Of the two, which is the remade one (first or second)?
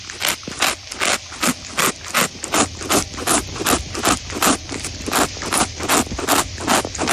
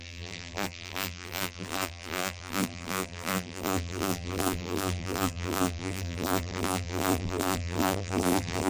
second